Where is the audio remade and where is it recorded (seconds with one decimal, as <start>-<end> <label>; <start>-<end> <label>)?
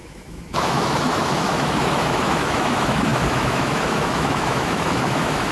0.0-5.5 remade